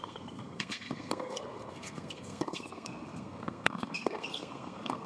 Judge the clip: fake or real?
fake